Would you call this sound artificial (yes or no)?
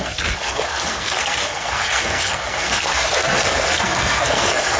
yes